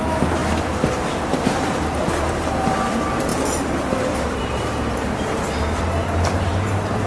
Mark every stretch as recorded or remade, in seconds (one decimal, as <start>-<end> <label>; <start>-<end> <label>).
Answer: 0.0-3.3 remade; 3.3-4.3 recorded; 4.3-7.1 remade